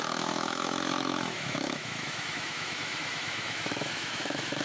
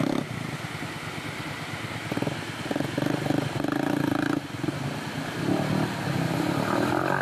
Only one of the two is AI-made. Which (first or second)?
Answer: first